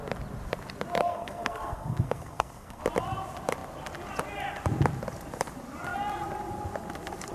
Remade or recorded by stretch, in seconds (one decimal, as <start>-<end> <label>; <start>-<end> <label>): 0.0-1.0 recorded; 1.0-2.8 remade; 2.8-7.3 recorded